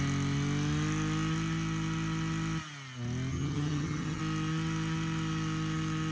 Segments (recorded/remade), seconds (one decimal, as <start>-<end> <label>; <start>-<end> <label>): 0.0-3.3 recorded; 3.3-4.2 remade; 4.2-6.1 recorded